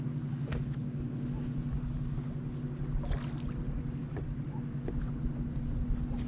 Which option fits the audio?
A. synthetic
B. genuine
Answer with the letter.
B